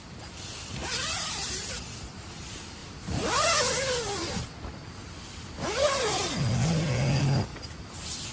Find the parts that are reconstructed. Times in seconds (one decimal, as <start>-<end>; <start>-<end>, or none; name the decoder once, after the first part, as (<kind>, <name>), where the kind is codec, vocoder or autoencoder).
none